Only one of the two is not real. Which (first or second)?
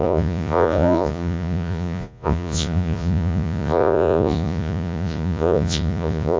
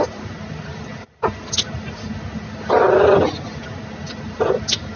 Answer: first